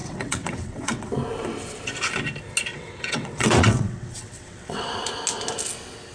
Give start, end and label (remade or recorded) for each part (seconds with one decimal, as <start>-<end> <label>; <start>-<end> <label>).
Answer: 0.0-1.1 remade; 1.1-2.7 recorded; 2.7-4.9 remade; 4.9-6.1 recorded